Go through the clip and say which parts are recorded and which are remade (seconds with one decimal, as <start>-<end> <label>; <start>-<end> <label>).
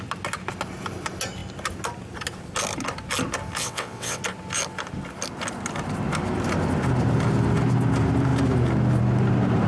0.0-3.6 recorded; 3.6-4.2 remade; 4.2-9.7 recorded